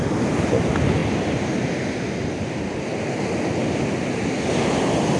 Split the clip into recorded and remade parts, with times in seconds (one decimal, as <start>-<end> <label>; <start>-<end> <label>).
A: 0.0-5.2 recorded